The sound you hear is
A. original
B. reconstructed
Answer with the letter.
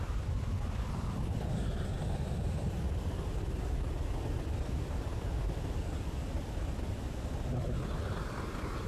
A